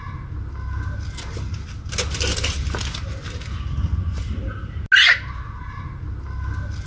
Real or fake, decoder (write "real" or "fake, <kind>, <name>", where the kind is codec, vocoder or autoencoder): real